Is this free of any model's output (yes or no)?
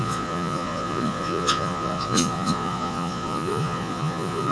no